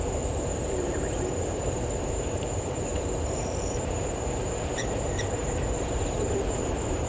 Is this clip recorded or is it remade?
remade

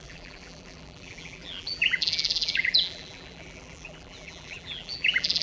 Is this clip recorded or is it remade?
remade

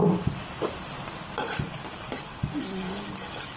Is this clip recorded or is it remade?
recorded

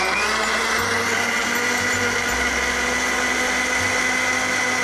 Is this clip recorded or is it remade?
recorded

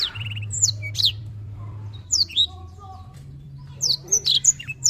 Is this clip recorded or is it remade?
remade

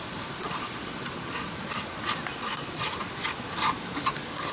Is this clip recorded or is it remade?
recorded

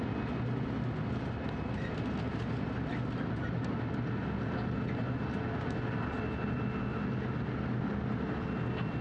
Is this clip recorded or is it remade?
recorded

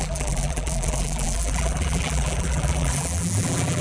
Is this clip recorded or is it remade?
remade